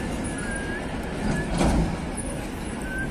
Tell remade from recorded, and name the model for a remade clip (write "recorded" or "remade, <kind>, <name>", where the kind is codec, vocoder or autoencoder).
recorded